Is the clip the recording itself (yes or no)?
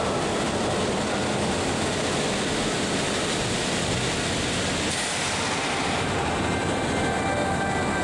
yes